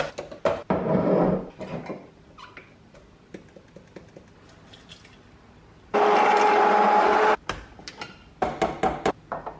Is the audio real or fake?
real